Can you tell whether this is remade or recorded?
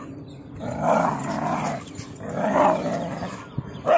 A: recorded